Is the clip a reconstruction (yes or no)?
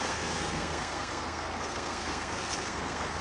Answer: yes